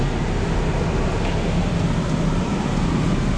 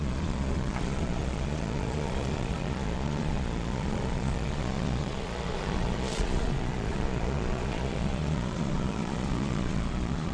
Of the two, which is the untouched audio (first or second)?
first